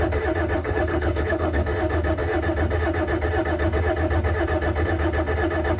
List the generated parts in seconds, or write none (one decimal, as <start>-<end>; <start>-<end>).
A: 0.6-1.6